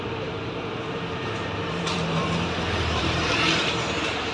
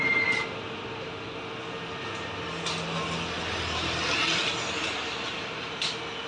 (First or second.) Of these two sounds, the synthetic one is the first